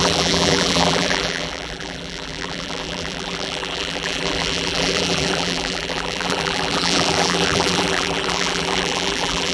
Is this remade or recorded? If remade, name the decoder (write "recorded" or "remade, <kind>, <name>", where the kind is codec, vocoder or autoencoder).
remade, vocoder, BigVGAN v2